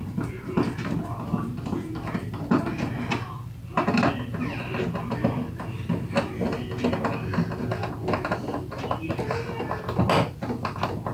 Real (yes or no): yes